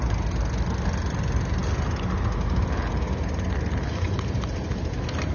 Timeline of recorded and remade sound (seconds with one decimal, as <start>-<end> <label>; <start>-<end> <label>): 0.0-5.3 recorded